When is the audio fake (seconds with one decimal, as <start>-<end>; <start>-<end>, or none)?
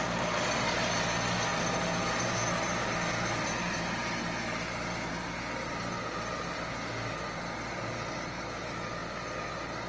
6.3-7.1